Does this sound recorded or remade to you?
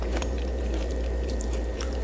remade